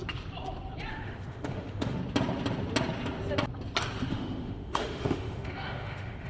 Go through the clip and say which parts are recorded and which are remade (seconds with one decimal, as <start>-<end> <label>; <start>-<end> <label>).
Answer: 0.0-0.9 recorded; 0.9-2.0 remade; 2.0-4.1 recorded; 4.1-6.3 remade